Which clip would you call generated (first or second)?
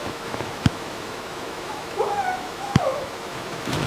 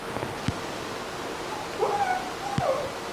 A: first